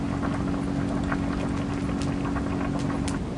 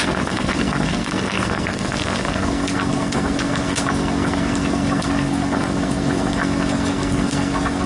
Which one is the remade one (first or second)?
second